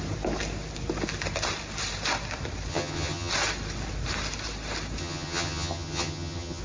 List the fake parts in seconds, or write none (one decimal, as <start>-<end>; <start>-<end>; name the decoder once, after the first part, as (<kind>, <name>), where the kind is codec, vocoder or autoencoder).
2.7-3.3 (vocoder, HiFi-GAN); 5.0-6.6